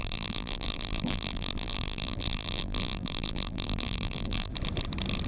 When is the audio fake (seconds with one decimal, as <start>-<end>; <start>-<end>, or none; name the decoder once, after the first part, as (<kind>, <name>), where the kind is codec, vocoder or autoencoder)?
0.0-4.5 (vocoder, BigVGAN v2)